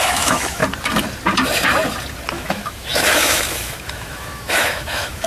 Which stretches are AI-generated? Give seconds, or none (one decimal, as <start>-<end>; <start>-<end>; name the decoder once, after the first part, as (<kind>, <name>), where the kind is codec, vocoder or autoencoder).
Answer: 0.0-0.6 (autoencoder, DAC-VAE); 2.3-5.3

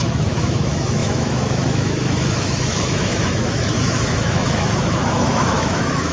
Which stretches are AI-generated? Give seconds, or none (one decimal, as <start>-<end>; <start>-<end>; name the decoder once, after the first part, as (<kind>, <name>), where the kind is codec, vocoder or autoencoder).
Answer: 0.0-6.1 (autoencoder, DAC-VAE)

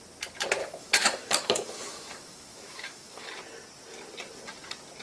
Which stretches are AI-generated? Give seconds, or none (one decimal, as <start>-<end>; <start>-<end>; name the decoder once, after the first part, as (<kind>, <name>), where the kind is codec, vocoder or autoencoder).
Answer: 0.6-3.3 (autoencoder, DAC-VAE)

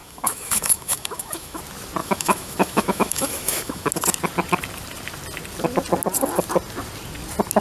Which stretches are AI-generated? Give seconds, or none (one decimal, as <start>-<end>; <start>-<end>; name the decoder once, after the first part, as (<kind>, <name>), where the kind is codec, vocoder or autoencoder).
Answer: 0.0-1.6 (autoencoder, DAC-VAE); 2.0-3.9